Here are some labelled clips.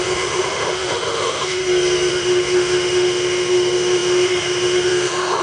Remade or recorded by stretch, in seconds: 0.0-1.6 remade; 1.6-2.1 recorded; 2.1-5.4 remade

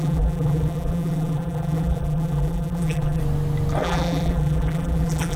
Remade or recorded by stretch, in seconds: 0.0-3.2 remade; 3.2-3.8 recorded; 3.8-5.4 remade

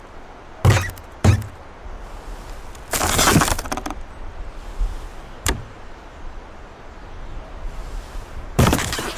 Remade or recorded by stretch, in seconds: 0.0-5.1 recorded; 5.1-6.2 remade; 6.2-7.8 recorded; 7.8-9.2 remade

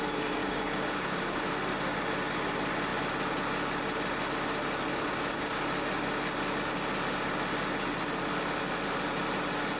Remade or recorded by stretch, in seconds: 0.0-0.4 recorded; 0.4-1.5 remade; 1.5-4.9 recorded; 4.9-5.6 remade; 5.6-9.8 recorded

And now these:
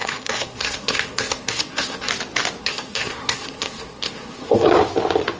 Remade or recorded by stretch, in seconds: 0.0-2.1 remade; 2.1-2.6 recorded; 2.6-4.8 remade; 4.8-5.4 recorded

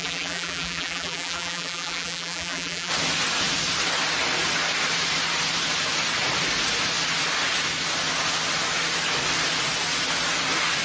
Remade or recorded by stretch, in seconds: 0.0-2.9 remade; 2.9-10.8 recorded

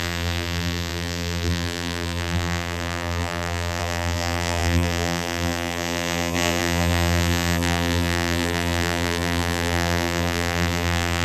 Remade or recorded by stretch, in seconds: 0.0-11.2 remade

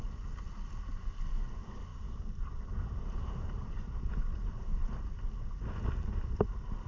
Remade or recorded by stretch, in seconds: 0.0-1.9 recorded; 1.9-4.1 remade; 4.1-6.9 recorded